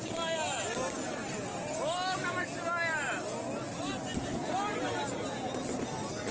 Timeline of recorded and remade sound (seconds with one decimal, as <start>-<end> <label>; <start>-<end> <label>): 0.0-6.3 recorded